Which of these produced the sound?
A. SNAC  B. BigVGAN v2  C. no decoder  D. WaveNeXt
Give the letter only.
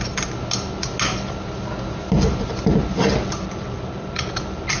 C